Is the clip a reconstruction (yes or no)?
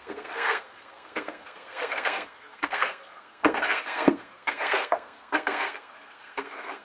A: yes